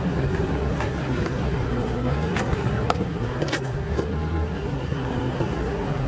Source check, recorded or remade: remade